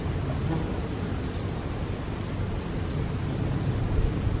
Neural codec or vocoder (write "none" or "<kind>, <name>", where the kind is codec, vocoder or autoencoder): none